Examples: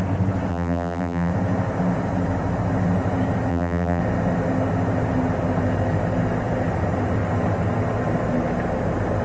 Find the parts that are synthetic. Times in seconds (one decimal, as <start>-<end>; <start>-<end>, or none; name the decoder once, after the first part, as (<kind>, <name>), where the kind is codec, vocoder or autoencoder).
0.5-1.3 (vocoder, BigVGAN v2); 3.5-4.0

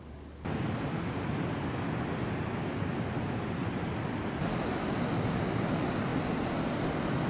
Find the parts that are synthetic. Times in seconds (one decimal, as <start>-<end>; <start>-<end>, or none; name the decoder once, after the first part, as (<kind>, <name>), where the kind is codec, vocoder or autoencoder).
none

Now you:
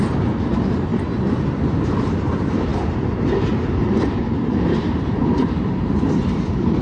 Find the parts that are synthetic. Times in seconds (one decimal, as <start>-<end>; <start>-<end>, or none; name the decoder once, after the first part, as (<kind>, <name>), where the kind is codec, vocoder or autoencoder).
0.0-0.9 (vocoder, BigVGAN v2); 2.3-6.8